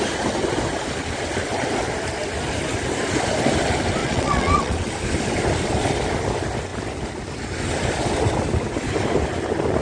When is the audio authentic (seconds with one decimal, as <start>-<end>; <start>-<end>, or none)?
0.0-4.0; 4.9-9.8